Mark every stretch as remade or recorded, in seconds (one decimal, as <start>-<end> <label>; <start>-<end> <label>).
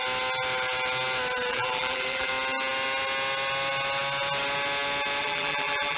0.0-1.5 recorded; 1.5-2.3 remade; 2.3-5.2 recorded; 5.2-6.0 remade